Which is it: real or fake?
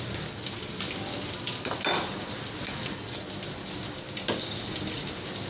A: real